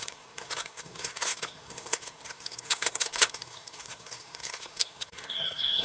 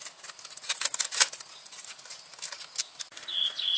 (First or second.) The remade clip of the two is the first